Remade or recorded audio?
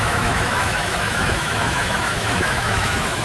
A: remade